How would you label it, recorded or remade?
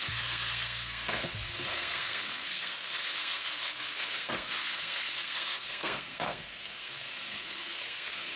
remade